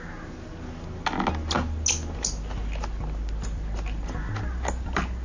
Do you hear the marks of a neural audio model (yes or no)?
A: no